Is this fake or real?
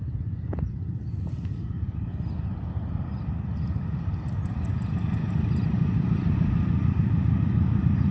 real